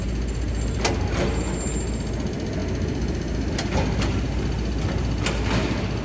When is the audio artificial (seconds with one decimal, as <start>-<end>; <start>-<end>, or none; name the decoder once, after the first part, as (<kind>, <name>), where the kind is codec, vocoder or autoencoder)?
none